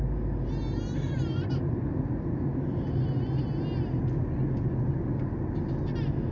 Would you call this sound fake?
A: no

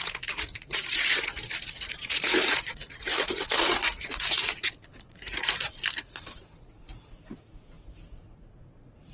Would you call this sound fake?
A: yes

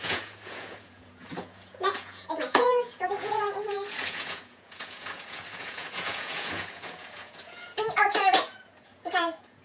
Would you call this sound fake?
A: yes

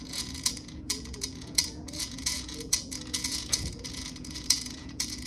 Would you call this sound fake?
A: yes